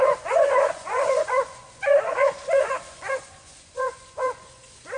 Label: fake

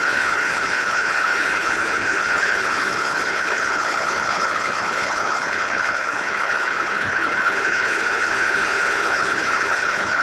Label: fake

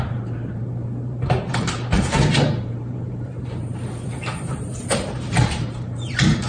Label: fake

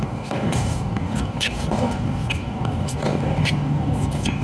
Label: fake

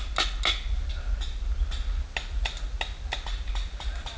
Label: real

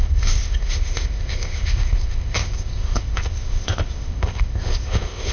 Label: fake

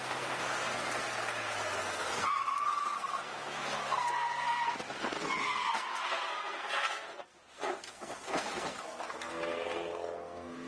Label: fake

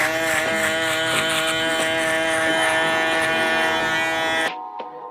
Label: real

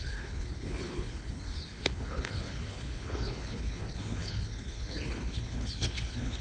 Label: fake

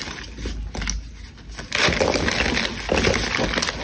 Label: real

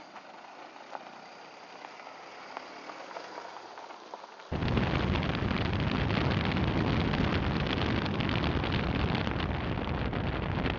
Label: real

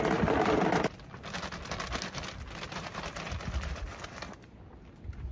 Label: real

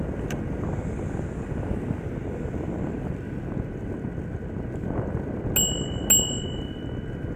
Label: real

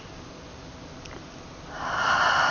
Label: real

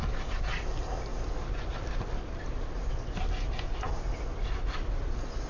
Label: real